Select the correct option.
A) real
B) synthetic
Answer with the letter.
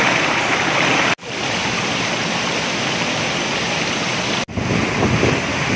A